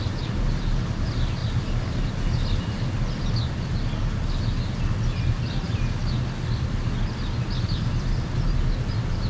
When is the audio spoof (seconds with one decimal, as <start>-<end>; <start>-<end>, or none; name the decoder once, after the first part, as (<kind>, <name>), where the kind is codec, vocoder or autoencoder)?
none